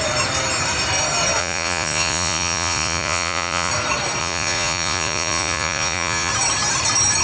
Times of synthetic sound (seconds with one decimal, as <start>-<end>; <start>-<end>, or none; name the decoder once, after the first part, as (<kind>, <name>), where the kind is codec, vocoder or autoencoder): 1.4-3.7 (vocoder, Vocos); 4.2-6.3